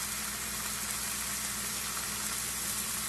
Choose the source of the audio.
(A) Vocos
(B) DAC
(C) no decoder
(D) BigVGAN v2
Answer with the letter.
C